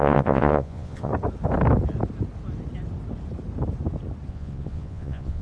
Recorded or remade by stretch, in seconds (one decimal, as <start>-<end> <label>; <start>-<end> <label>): 0.0-1.1 remade; 1.1-4.3 recorded; 4.3-5.4 remade